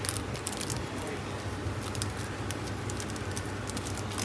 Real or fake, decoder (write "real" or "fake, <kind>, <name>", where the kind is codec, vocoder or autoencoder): real